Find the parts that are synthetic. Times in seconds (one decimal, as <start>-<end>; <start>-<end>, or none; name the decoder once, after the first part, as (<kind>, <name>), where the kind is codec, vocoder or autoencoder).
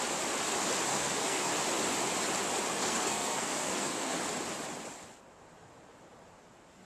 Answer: 0.9-1.5 (codec, SNAC); 2.7-4.2